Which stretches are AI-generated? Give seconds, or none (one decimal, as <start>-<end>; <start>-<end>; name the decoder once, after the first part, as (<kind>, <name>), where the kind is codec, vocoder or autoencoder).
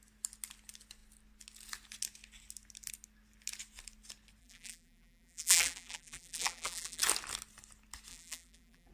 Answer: 4.4-7.0 (vocoder, BigVGAN v2); 8.1-8.9